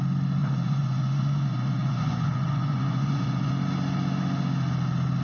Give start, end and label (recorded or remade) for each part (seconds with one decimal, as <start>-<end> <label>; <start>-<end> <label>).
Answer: 0.0-0.4 recorded; 0.4-3.5 remade; 3.5-5.2 recorded